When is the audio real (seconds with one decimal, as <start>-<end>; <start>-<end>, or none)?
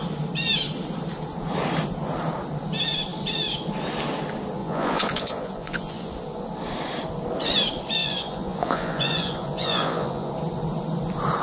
0.0-4.6; 6.1-8.0; 10.3-11.4